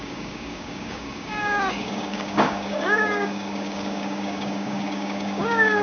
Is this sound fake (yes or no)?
yes